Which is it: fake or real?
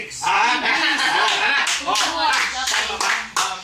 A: real